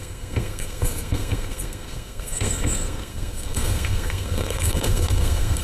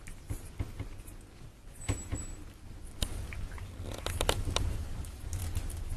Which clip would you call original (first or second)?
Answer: second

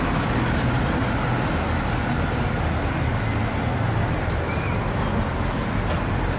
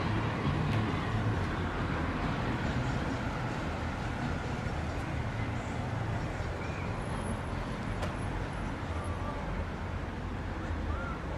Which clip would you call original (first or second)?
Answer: first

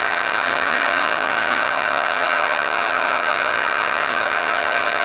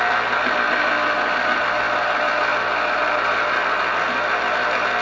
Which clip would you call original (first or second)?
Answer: second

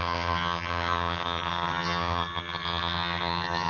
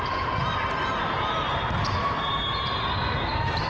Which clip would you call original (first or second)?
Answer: second